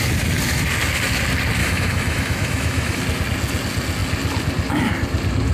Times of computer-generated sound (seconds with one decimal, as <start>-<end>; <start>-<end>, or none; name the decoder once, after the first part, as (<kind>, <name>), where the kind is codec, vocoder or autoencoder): 1.6-3.0 (autoencoder, DAC-VAE)